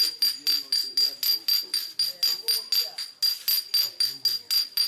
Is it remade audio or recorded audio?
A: recorded